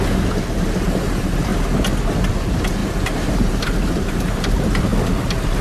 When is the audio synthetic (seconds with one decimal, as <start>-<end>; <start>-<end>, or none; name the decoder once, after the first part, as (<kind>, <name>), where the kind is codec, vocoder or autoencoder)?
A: 0.0-1.5 (vocoder, BigVGAN v2); 2.3-5.6